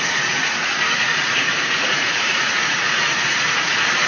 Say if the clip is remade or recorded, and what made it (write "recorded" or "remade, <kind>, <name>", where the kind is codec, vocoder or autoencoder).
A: remade, vocoder, Vocos